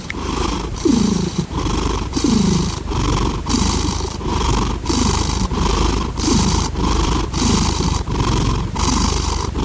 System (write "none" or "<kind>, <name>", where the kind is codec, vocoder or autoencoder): vocoder, BigVGAN v2